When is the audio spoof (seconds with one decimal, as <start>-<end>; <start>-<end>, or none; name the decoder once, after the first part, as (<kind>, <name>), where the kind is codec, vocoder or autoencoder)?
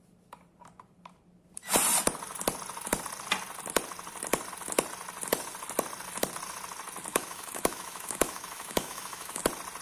7.1-9.4 (autoencoder, DAC-VAE)